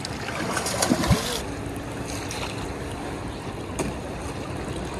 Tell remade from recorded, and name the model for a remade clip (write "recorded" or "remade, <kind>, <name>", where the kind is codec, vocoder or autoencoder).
recorded